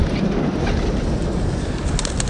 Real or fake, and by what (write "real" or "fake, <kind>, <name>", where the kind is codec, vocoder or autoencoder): real